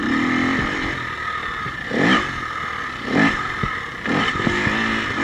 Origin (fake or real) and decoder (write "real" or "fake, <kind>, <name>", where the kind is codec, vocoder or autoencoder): real